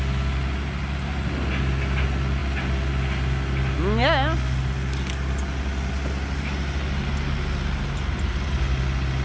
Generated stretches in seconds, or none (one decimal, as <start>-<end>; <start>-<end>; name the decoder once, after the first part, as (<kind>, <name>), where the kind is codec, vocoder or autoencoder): none